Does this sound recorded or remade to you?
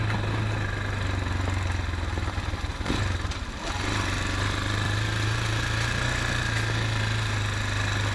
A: recorded